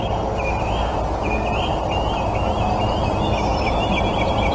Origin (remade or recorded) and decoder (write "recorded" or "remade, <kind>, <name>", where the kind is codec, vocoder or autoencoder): recorded